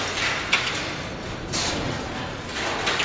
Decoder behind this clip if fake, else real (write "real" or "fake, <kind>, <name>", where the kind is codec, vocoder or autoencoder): real